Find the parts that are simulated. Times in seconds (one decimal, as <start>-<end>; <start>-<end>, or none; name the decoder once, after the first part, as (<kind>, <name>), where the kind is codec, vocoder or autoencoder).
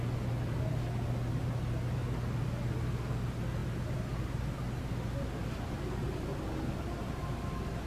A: none